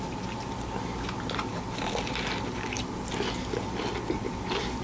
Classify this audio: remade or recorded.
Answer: recorded